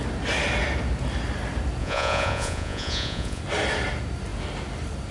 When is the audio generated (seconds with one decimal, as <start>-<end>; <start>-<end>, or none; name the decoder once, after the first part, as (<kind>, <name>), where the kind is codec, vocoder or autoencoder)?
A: 1.8-3.4 (vocoder, Vocos)